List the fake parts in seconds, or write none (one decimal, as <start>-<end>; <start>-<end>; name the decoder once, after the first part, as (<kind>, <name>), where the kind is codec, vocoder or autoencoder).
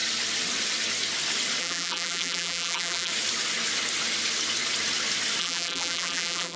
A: 1.6-3.1 (vocoder, BigVGAN v2); 5.4-6.6